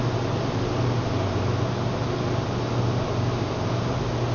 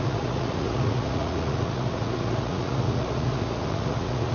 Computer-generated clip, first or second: second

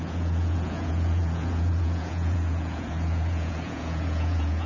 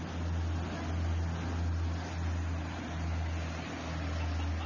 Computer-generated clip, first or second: first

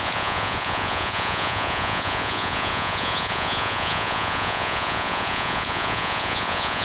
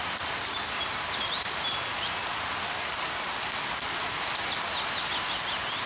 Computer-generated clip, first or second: first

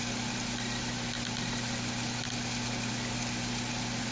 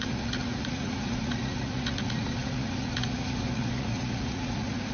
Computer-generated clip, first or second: second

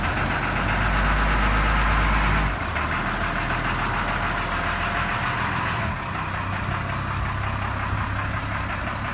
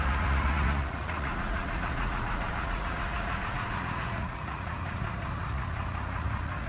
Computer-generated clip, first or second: second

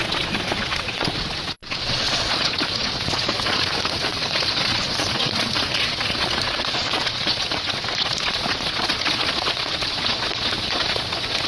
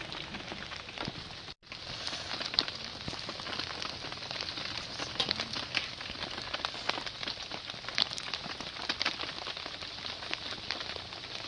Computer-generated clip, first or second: first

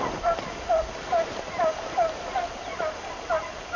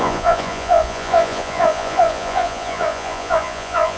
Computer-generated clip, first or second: second